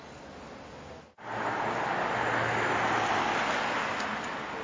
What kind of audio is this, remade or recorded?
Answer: recorded